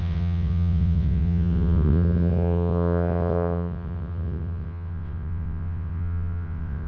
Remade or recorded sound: remade